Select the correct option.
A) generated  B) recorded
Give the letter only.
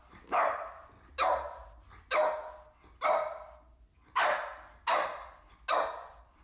B